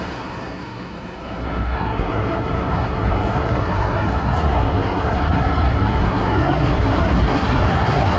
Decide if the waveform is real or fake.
fake